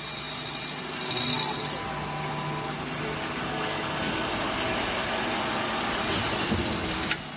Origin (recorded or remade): recorded